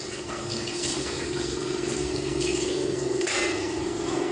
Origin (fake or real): fake